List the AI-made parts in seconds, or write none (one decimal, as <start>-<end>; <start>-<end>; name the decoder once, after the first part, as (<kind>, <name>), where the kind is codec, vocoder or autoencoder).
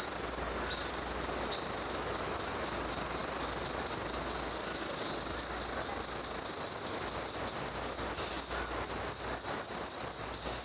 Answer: none